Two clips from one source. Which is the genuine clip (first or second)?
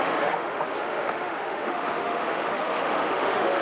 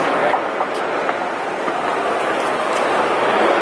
second